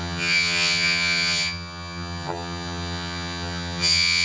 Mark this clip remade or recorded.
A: remade